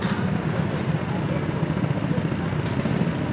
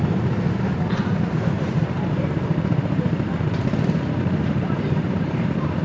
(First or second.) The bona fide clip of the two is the first